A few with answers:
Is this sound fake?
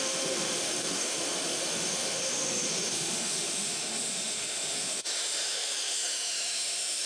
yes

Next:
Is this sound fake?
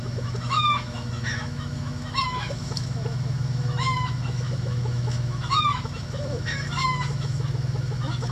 yes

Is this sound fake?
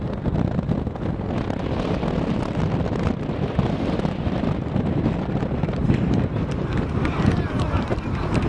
yes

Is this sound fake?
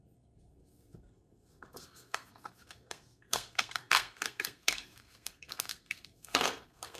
yes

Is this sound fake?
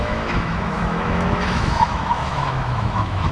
yes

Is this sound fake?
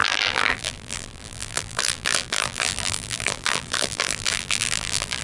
yes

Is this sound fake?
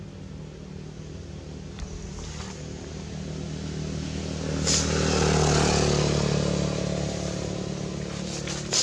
no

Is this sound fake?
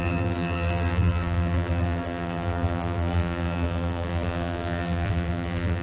yes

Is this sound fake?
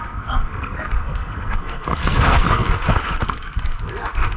yes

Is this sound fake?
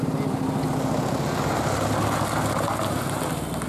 no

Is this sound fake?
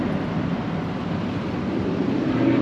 yes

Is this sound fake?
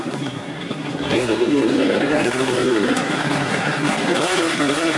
yes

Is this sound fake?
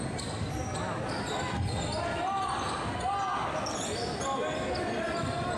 no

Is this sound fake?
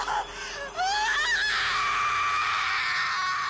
no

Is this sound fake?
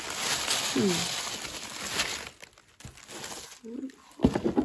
no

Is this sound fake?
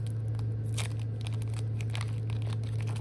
no